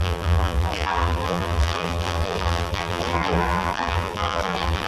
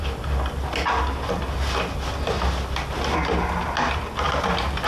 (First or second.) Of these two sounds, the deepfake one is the first